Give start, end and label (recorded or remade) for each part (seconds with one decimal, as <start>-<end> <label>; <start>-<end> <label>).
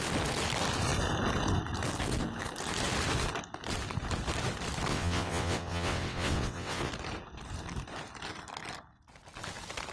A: 0.0-4.9 recorded; 4.9-6.9 remade; 6.9-9.9 recorded